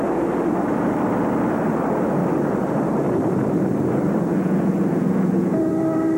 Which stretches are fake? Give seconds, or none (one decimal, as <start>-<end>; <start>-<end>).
4.3-5.7